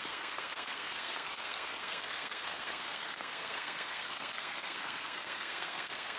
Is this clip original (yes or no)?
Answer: no